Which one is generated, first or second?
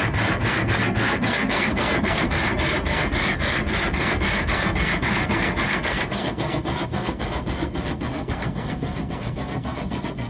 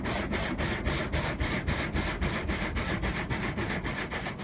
first